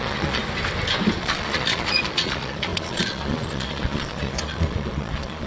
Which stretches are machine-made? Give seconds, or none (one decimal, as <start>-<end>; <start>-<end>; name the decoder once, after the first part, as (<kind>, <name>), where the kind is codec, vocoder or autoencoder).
0.0-0.4 (vocoder, Vocos); 1.2-5.5